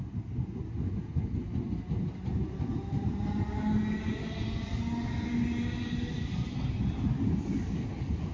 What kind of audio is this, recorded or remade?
recorded